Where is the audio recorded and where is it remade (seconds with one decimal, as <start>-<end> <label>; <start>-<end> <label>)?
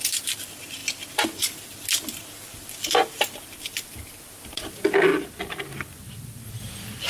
0.0-7.1 recorded